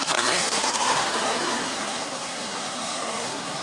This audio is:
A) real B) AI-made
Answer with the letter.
B